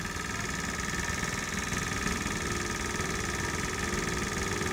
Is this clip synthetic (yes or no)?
no